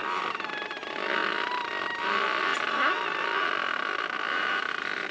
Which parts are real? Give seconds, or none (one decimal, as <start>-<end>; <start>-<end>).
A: 1.2-2.0